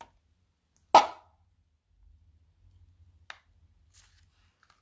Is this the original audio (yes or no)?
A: yes